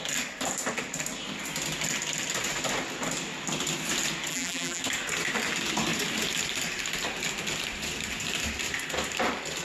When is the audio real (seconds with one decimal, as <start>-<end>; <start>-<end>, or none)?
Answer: 0.0-4.3; 4.8-9.6